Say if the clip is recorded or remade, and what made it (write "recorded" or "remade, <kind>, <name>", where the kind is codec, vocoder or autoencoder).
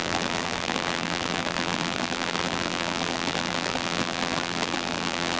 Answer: remade, vocoder, BigVGAN v2